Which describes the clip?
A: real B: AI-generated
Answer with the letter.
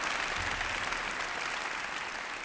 A